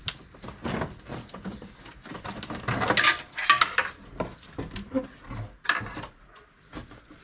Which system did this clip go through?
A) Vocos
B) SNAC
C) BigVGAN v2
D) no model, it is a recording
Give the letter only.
D